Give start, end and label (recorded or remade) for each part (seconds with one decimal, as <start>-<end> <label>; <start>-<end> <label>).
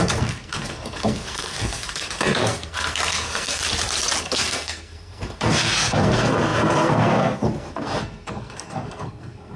0.0-3.6 remade; 3.6-4.2 recorded; 4.2-9.6 remade